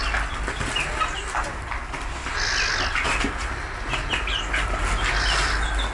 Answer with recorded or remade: recorded